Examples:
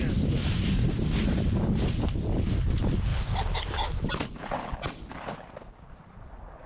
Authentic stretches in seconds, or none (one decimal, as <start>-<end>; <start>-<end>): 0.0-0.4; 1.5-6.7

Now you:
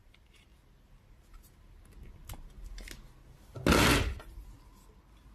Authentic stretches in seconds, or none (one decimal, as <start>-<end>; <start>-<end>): 0.0-5.3

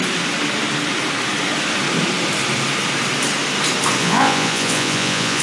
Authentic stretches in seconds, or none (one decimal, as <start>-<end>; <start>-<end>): 0.0-4.0

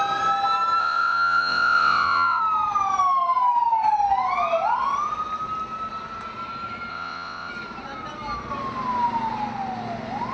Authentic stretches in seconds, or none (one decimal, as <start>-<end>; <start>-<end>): 0.0-0.8; 2.4-6.9; 7.5-10.3

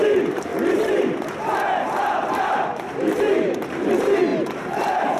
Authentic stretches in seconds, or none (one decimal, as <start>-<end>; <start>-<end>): none

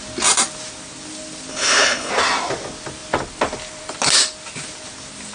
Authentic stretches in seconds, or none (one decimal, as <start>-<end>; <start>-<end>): 0.0-1.5; 2.1-5.3

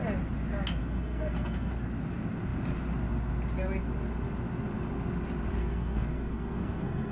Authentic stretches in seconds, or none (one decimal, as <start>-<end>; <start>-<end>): 0.0-0.8; 1.7-5.6